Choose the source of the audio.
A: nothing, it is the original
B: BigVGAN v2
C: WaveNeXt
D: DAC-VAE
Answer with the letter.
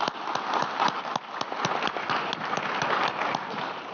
A